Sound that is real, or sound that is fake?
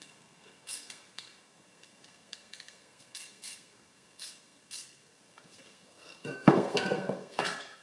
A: fake